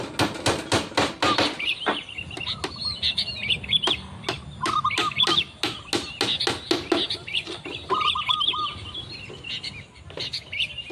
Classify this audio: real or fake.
real